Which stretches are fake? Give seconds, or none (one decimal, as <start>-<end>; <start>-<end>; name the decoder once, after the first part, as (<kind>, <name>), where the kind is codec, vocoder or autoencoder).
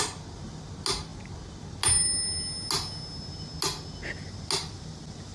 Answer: none